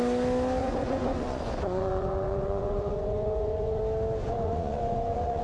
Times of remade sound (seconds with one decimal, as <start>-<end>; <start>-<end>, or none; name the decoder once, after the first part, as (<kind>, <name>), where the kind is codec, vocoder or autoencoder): 0.6-3.8 (vocoder, Vocos); 4.2-5.4